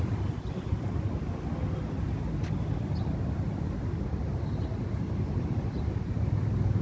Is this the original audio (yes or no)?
yes